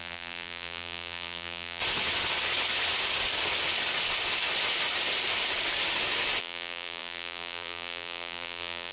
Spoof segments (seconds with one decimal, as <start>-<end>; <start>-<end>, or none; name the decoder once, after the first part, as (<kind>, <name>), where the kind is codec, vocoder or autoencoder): 0.0-1.8 (vocoder, BigVGAN v2); 6.4-8.9